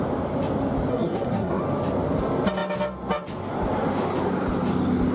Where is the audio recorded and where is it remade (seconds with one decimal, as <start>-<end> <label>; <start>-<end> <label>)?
0.0-0.9 recorded; 0.9-1.6 remade; 1.6-5.1 recorded